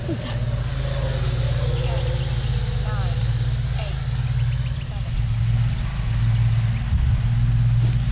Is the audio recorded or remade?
recorded